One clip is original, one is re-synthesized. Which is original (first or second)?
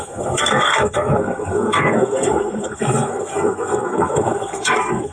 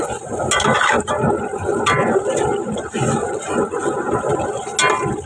second